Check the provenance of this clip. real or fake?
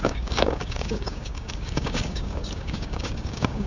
fake